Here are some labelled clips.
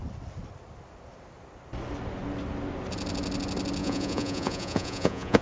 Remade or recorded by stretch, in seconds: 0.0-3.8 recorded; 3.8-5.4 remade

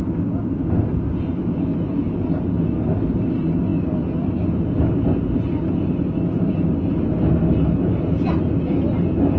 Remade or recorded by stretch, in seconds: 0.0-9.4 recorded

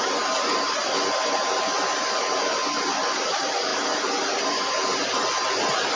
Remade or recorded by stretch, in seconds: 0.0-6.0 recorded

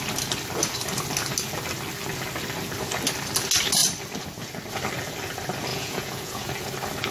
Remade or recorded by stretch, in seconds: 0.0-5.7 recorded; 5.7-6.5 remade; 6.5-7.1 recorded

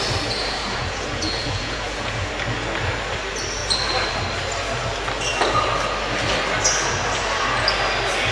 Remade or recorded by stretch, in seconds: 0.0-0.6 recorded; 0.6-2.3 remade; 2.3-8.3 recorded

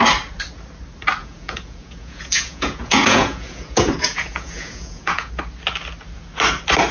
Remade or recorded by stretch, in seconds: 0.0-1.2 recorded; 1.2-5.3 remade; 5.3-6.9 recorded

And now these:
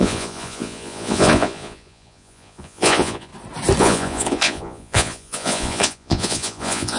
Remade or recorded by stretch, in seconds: 0.0-3.3 remade; 3.3-3.8 recorded; 3.8-7.0 remade

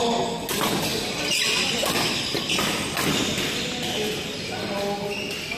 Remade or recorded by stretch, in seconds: 0.0-5.6 recorded